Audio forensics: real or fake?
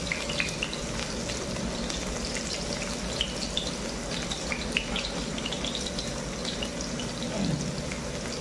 real